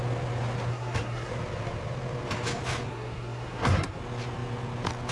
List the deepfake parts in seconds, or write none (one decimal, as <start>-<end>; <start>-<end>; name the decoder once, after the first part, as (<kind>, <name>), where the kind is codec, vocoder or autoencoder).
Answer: 0.7-1.3 (codec, SNAC); 2.9-4.0